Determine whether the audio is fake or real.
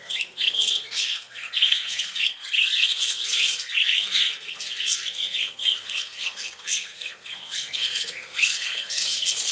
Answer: fake